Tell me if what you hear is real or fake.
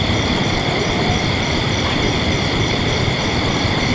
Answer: fake